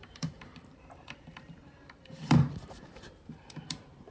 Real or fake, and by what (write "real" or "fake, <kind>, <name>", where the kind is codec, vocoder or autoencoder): fake, vocoder, BigVGAN v2